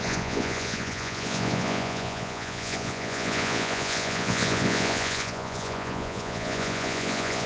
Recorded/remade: remade